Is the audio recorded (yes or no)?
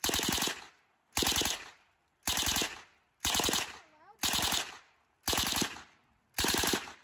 yes